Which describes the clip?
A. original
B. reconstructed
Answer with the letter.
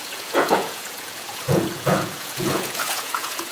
B